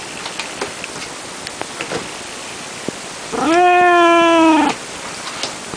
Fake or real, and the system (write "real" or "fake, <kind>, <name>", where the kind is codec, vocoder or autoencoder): real